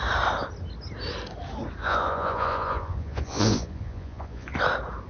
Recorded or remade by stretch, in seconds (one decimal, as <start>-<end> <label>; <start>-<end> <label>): 0.0-1.8 recorded; 1.8-4.6 remade; 4.6-5.1 recorded